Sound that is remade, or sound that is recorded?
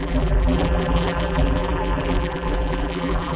remade